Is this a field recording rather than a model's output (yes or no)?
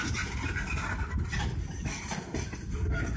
yes